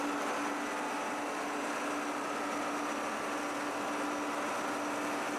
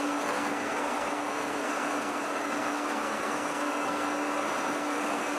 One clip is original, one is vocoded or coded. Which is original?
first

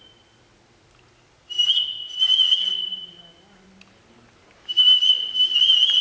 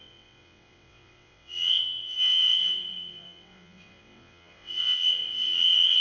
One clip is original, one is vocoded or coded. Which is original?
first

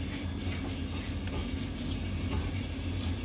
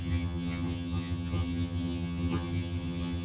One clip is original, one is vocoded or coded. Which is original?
first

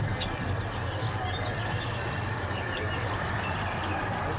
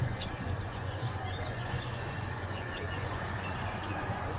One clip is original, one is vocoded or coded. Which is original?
first